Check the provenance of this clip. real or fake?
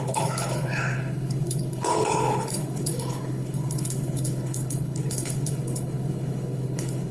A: fake